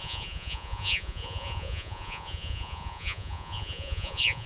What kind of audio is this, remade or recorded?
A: remade